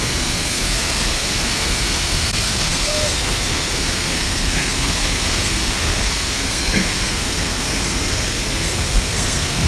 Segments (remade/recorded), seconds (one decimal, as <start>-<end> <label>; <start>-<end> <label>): 0.0-9.7 remade